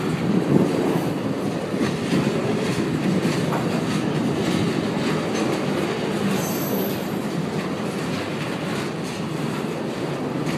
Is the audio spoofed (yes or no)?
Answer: no